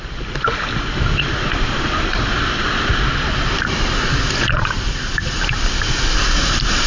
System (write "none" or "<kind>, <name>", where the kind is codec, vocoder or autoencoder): none